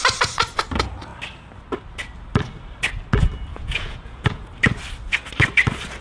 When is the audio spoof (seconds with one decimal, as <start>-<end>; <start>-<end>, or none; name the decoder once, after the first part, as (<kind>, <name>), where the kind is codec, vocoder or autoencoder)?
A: 3.5-4.5 (vocoder, Vocos)